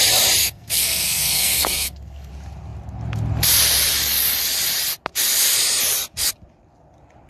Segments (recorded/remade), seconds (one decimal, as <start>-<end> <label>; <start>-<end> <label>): 0.0-0.4 recorded; 0.4-2.3 remade; 2.3-7.3 recorded